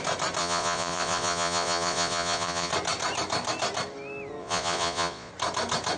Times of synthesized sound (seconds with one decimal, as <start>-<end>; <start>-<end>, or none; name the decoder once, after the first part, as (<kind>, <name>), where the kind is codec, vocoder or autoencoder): 0.4-2.7 (vocoder, Vocos); 4.4-5.3